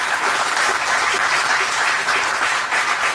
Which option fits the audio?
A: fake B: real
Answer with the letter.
B